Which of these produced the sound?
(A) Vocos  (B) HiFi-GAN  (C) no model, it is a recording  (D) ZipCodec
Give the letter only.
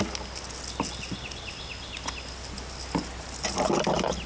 C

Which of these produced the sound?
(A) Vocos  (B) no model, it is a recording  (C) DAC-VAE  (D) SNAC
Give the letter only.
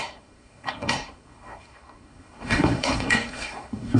D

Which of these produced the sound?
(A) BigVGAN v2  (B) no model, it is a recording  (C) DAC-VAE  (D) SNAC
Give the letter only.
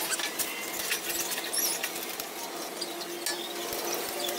B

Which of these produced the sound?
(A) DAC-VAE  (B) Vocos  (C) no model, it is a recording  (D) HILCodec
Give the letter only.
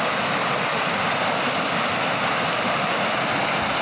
C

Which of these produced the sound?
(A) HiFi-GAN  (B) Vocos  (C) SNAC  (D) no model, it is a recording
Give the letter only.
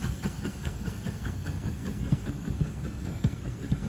C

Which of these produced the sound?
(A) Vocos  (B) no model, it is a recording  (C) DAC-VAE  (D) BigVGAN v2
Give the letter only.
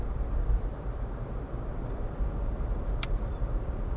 D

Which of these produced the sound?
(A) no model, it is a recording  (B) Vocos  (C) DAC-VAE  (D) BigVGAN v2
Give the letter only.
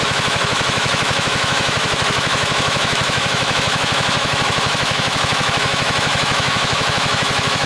C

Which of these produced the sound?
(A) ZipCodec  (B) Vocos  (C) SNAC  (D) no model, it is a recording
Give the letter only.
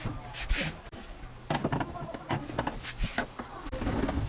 D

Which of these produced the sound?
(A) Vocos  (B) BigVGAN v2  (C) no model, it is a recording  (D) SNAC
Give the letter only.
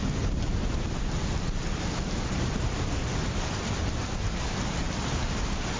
C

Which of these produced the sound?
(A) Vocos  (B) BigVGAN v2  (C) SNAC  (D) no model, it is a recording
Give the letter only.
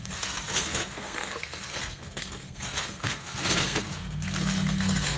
C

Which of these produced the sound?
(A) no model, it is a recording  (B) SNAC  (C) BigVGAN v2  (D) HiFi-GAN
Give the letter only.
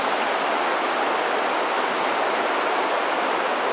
A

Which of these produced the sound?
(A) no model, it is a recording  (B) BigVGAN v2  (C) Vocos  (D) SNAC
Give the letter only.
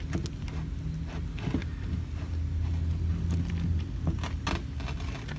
A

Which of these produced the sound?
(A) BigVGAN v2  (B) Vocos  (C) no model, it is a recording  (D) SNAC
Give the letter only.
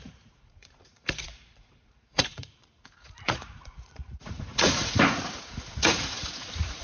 B